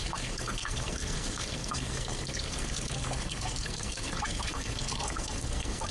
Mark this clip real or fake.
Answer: fake